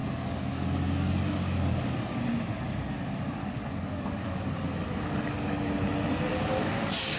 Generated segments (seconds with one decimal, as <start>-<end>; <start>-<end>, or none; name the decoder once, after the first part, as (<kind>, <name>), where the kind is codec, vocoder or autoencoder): 0.0-2.1 (codec, DAC); 3.4-5.7; 6.3-7.2